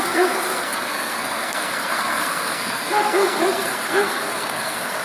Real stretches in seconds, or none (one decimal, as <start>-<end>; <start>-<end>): none